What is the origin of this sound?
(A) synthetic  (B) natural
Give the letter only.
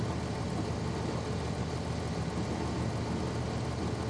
B